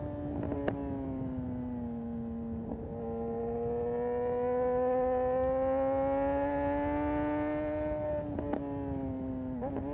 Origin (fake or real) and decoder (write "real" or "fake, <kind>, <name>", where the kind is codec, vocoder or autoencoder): real